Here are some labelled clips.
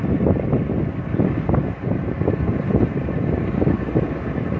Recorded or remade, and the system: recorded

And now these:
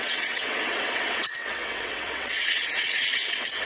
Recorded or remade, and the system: remade, vocoder, WaveNeXt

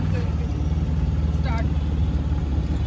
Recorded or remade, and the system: recorded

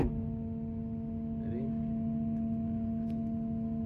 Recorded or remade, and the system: recorded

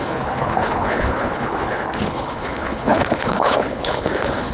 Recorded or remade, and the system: remade, codec, HILCodec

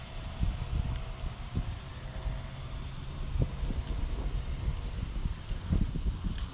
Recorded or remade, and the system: recorded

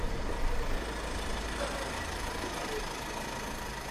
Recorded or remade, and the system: recorded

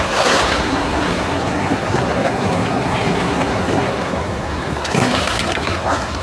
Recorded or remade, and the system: remade, codec, SNAC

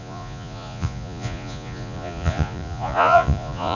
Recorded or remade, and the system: remade, vocoder, Vocos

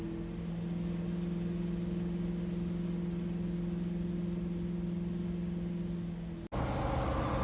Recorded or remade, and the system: recorded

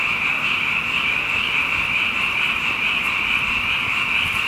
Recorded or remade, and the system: remade, vocoder, BigVGAN v2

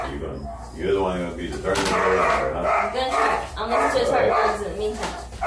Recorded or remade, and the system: recorded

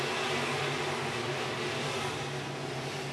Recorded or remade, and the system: recorded